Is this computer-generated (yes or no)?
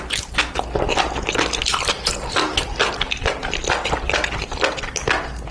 no